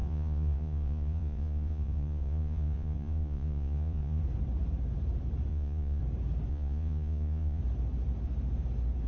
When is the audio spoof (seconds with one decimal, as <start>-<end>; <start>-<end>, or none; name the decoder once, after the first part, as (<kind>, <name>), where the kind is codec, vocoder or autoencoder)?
0.0-4.2 (vocoder, Vocos); 5.5-6.0; 6.5-7.6